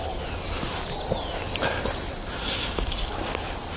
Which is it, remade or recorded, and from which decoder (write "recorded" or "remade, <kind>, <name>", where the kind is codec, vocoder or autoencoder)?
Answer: recorded